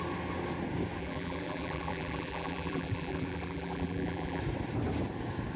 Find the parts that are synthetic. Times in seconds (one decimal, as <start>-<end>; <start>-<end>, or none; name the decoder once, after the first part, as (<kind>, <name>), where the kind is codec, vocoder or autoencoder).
1.0-4.4 (vocoder, BigVGAN v2)